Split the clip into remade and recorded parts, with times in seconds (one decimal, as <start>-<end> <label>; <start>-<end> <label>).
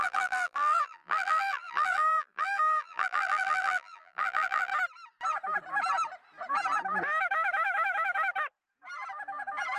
0.0-4.7 remade; 4.7-9.8 recorded